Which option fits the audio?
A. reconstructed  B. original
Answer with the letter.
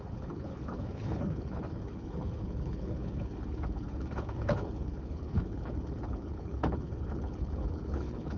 A